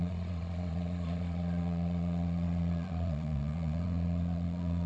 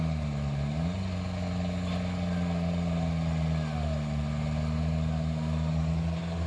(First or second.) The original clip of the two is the second